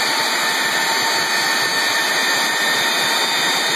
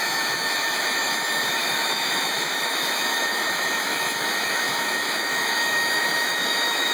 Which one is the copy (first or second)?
second